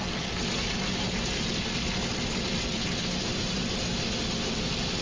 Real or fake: real